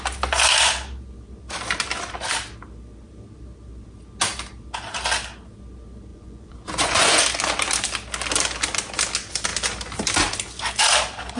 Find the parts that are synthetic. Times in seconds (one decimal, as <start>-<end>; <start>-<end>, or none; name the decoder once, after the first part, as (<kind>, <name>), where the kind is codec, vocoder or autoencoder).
6.1-7.2 (vocoder, Vocos)